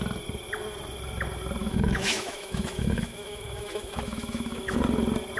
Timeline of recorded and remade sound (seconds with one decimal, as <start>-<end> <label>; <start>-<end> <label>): 0.0-1.6 recorded; 1.6-4.8 remade; 4.8-5.4 recorded